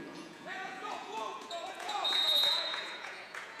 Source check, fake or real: fake